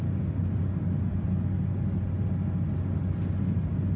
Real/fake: real